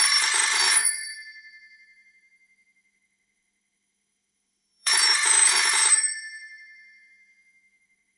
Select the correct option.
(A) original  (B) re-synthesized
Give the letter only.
B